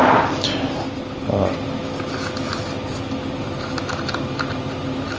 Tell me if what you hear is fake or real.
real